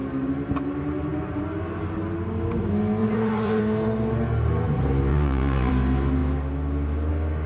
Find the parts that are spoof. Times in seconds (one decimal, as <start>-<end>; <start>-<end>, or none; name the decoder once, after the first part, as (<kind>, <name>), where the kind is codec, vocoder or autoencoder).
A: 3.0-3.6 (vocoder, Vocos); 5.1-5.7